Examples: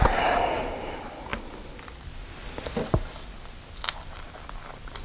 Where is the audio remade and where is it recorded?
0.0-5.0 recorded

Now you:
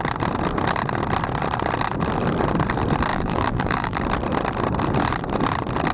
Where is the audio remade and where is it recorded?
0.0-3.1 recorded; 3.1-4.0 remade; 4.0-5.9 recorded

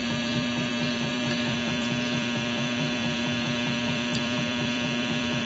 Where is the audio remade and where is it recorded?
0.0-5.5 remade

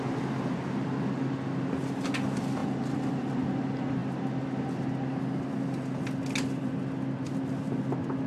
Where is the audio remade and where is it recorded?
0.0-8.3 recorded

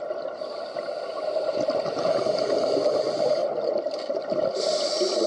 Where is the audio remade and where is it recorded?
0.0-3.4 recorded; 3.4-4.2 remade; 4.2-5.3 recorded

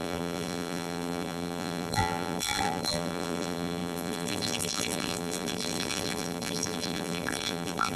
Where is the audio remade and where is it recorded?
0.0-8.0 remade

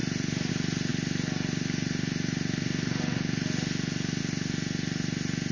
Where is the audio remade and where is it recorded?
0.0-0.5 remade; 0.5-5.5 recorded

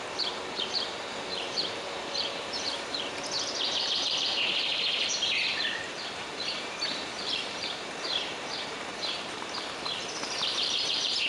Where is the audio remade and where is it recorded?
0.0-11.3 remade